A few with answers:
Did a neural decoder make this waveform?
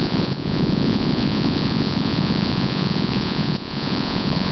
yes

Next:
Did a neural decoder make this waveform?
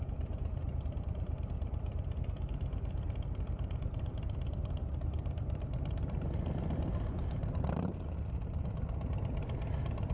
no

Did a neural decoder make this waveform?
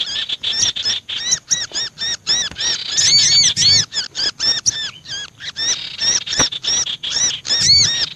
no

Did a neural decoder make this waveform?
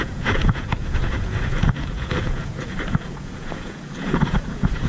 yes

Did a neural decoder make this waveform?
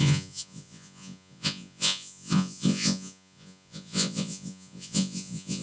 yes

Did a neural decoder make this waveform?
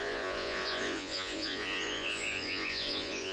yes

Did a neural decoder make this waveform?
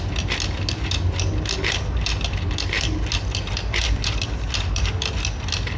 no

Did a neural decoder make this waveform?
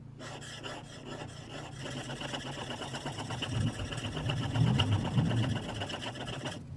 no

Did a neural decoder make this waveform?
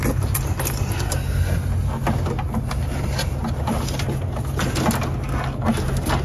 no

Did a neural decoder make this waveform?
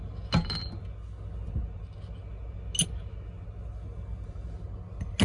no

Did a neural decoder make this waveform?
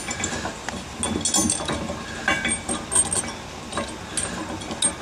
no